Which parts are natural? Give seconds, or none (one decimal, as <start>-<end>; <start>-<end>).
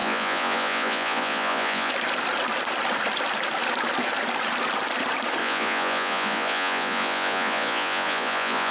1.9-5.4